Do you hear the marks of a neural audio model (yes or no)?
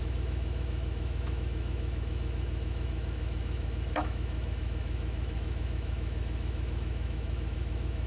yes